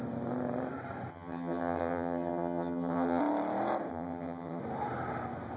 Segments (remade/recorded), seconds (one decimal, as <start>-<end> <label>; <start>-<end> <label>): 0.0-1.1 recorded; 1.1-3.2 remade; 3.2-3.9 recorded; 3.9-4.6 remade; 4.6-5.6 recorded